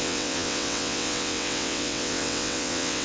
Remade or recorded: remade